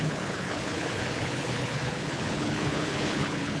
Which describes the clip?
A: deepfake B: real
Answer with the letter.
A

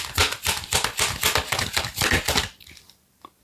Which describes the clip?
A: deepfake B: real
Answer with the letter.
B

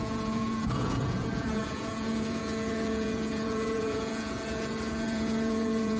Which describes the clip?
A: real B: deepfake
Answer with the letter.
B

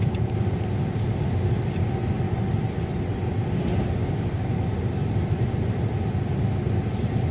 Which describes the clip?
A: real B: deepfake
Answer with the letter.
A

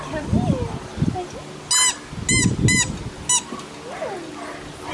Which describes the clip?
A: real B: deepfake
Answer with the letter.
A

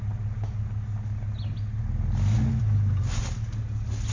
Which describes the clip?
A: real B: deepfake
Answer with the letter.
A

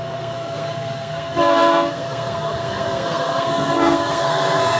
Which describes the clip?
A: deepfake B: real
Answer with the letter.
A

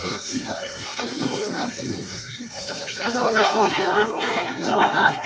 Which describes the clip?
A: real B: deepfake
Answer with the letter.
B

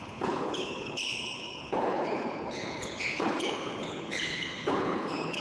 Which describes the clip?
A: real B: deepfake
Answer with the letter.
B